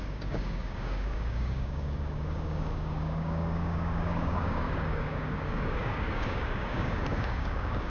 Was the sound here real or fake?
fake